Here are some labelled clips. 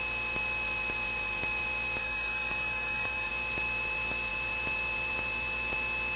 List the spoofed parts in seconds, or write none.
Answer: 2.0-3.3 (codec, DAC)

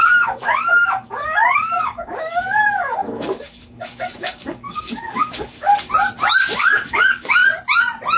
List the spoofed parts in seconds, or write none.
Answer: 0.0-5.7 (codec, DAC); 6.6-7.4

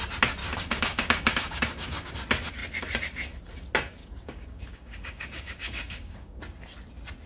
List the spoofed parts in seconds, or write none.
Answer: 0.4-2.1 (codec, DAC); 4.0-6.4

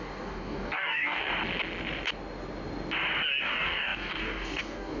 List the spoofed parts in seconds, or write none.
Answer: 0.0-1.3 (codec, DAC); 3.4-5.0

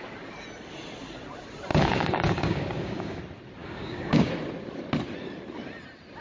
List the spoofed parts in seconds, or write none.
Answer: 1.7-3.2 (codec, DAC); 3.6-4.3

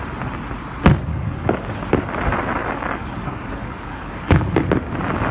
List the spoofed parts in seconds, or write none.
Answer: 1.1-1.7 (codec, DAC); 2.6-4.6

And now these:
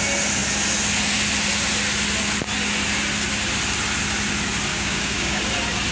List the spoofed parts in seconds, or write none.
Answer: 4.7-5.4 (codec, DAC)

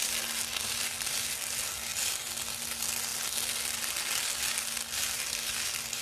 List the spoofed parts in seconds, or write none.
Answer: none